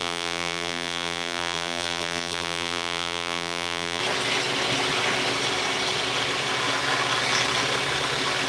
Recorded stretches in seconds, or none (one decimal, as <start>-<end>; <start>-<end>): 4.0-8.5